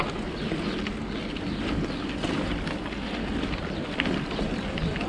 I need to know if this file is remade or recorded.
recorded